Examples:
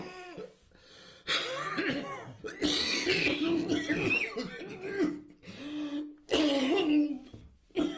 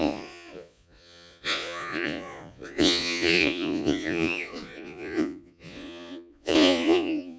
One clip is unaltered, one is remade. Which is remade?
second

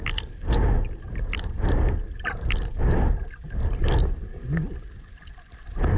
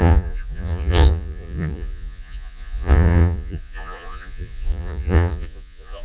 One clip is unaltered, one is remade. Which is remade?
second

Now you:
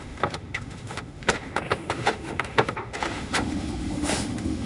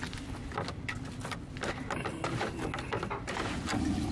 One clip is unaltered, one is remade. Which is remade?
first